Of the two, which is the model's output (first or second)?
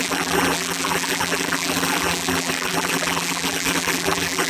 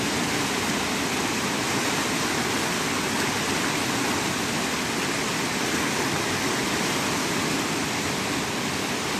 first